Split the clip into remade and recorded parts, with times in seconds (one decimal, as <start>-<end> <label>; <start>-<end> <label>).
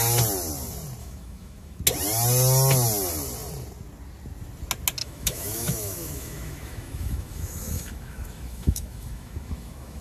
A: 0.0-1.0 recorded; 1.0-1.8 remade; 1.8-5.0 recorded; 5.0-10.0 remade